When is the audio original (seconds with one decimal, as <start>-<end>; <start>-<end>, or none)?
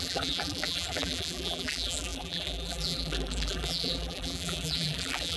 none